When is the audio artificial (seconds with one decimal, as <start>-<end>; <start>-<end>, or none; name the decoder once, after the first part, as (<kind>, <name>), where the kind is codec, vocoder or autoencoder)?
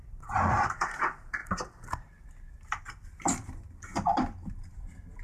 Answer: 0.0-5.2 (vocoder, BigVGAN v2)